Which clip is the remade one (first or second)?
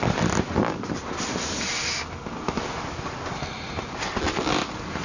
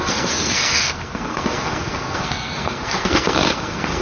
second